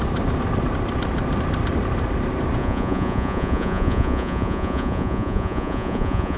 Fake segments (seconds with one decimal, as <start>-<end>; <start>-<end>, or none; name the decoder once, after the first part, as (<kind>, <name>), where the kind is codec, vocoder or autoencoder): 2.6-6.4 (vocoder, Vocos)